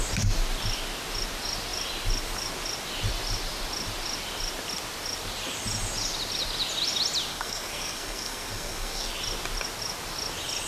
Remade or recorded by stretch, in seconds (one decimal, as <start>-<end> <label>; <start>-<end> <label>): 0.0-7.3 recorded; 7.3-9.1 remade; 9.1-10.7 recorded